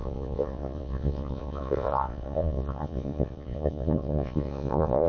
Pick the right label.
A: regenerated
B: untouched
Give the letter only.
A